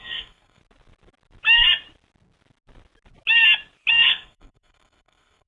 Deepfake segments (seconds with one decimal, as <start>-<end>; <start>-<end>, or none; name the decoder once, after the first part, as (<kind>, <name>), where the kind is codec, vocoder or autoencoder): 0.0-0.6 (codec, SNAC); 3.9-5.5